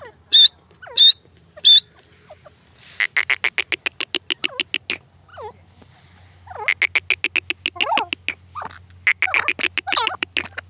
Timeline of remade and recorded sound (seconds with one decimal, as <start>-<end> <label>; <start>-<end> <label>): 0.0-10.7 recorded